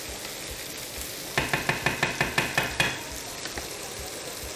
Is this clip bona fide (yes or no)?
yes